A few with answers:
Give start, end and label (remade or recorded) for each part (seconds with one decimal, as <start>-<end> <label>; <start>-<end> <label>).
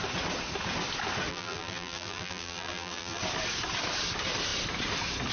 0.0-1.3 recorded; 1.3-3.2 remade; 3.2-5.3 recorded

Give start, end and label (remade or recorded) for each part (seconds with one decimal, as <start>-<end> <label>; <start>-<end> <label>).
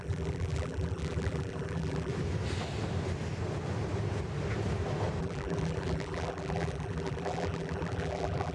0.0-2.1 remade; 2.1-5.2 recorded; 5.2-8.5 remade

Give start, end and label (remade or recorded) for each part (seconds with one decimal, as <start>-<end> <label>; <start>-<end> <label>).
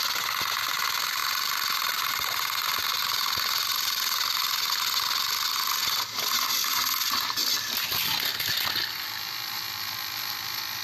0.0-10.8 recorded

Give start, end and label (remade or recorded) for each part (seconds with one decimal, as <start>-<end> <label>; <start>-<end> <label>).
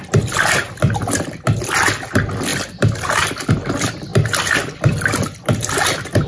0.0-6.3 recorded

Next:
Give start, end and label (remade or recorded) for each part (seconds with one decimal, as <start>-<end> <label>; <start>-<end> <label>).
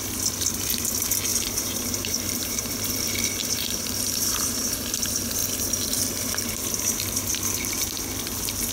0.0-1.3 recorded; 1.3-2.7 remade; 2.7-3.4 recorded; 3.4-4.7 remade; 4.7-8.7 recorded